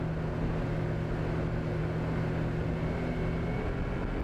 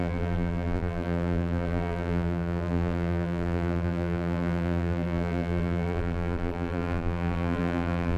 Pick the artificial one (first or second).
second